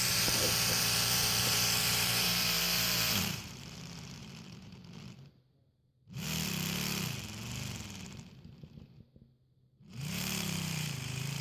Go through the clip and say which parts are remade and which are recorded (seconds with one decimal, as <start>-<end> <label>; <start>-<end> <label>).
0.0-4.8 remade; 4.8-9.9 recorded; 9.9-11.4 remade